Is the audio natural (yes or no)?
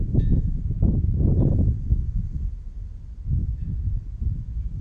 yes